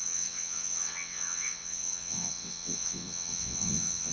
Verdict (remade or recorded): remade